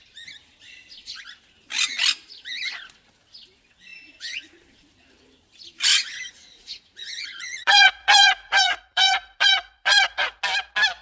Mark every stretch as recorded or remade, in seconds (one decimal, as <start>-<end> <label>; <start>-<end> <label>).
0.0-5.9 recorded; 5.9-10.4 remade; 10.4-11.0 recorded